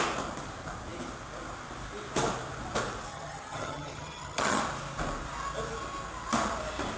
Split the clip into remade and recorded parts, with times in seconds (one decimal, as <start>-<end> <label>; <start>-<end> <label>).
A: 0.0-3.1 recorded; 3.1-4.6 remade; 4.6-7.0 recorded